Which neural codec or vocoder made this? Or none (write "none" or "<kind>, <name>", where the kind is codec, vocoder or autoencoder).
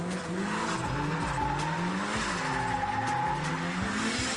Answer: none